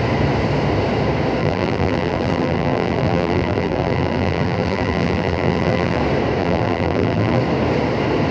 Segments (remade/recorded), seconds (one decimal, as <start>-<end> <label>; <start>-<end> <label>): 0.0-1.4 recorded; 1.4-6.0 remade; 6.0-6.4 recorded; 6.4-7.4 remade; 7.4-8.3 recorded